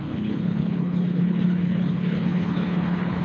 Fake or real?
fake